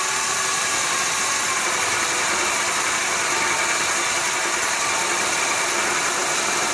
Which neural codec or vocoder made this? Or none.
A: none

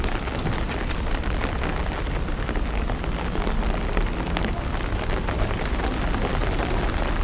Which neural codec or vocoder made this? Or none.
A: none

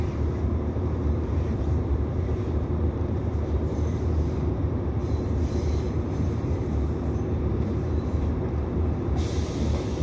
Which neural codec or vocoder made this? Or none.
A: vocoder, BigVGAN v2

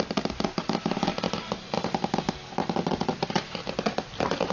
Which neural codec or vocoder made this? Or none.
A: none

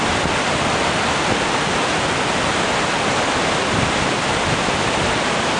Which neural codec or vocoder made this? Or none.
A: none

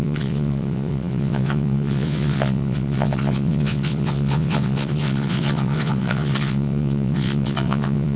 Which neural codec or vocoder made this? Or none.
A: vocoder, WaveNeXt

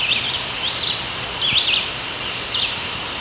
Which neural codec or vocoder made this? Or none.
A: none